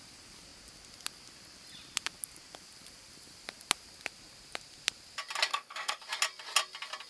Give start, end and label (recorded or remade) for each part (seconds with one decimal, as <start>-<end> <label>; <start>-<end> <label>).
0.0-5.5 recorded; 5.5-6.0 remade; 6.0-7.1 recorded